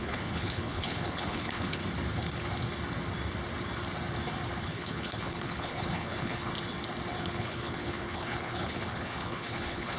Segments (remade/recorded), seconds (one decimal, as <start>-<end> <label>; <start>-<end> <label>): 0.0-1.8 remade; 1.8-4.6 recorded; 4.6-6.5 remade; 6.5-7.2 recorded; 7.2-10.0 remade